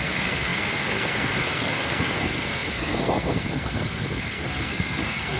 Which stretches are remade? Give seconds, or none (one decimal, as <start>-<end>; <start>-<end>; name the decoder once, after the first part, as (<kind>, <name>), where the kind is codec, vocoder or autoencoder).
0.0-5.4 (codec, SNAC)

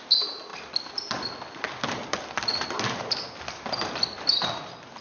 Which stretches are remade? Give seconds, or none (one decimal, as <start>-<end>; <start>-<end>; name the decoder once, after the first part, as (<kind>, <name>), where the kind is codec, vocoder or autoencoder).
none

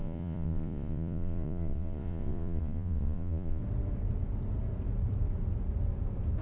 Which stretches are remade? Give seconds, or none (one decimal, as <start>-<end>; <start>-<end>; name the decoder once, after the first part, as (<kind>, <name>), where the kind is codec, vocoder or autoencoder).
0.0-3.6 (vocoder, Vocos)

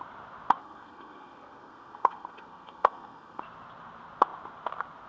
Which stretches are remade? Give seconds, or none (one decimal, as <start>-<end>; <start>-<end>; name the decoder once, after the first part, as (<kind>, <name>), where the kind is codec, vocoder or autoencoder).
0.6-3.4 (codec, SNAC)

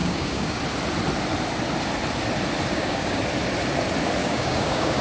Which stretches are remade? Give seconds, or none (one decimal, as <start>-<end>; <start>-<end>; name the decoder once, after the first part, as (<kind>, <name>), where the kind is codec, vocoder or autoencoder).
0.0-0.6 (codec, DAC); 2.7-3.2; 4.2-5.0

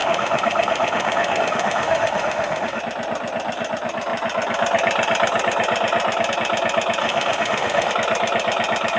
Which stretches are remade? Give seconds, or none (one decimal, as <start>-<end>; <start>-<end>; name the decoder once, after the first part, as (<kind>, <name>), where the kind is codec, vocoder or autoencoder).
0.0-2.8 (autoencoder, DAC-VAE); 7.0-7.9